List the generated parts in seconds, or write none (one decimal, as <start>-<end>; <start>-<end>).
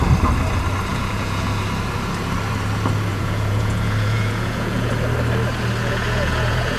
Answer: 0.9-1.5; 3.1-4.9; 5.8-6.8